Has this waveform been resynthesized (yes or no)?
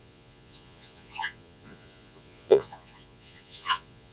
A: yes